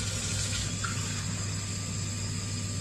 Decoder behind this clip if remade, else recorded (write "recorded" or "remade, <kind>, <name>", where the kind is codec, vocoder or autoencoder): recorded